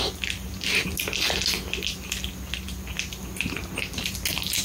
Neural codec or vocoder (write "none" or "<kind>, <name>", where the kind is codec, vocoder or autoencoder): none